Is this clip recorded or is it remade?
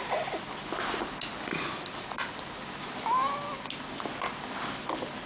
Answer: recorded